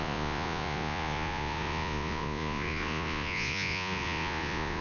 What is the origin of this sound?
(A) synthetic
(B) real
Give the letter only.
A